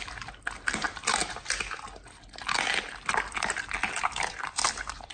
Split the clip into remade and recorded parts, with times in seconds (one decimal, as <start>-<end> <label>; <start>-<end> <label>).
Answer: 0.0-1.2 remade; 1.2-2.9 recorded; 2.9-5.1 remade